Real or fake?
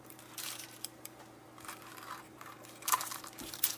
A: fake